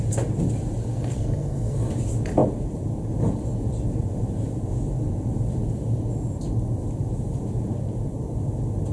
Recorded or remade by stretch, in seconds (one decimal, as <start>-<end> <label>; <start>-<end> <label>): 0.0-0.9 recorded; 0.9-1.9 remade; 1.9-8.9 recorded